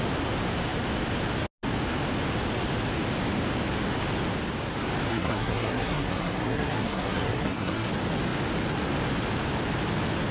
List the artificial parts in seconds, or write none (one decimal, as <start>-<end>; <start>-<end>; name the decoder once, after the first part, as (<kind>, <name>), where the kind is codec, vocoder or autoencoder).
5.1-7.9 (codec, SNAC)